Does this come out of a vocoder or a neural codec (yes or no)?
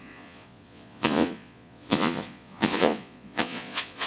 yes